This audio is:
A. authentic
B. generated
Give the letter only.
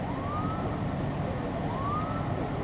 A